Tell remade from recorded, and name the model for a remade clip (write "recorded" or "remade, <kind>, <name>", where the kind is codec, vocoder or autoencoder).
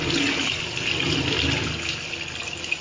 recorded